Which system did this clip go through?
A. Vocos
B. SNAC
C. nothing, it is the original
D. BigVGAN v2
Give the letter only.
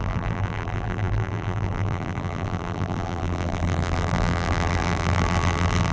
D